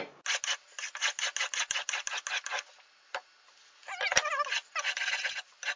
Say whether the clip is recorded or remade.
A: recorded